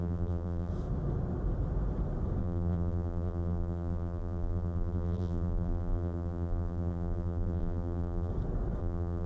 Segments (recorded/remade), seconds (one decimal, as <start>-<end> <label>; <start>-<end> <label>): 0.0-0.7 remade; 0.7-2.4 recorded; 2.4-8.3 remade; 8.3-8.8 recorded; 8.8-9.3 remade